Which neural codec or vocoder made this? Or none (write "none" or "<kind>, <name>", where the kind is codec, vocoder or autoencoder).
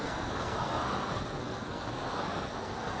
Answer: codec, SNAC